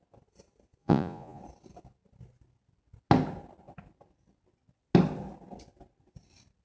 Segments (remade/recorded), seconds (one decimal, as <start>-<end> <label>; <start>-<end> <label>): 0.0-0.8 recorded; 0.8-1.4 remade; 1.4-6.6 recorded